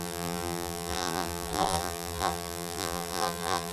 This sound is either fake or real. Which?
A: fake